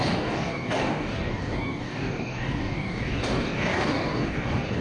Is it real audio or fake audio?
fake